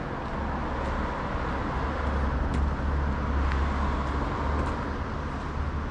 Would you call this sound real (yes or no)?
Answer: yes